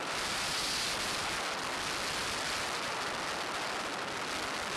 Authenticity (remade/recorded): recorded